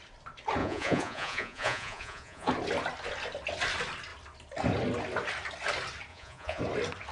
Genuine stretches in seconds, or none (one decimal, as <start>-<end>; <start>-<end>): 0.0-0.6; 2.5-6.1; 6.6-7.1